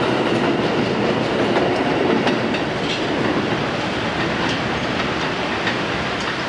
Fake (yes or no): no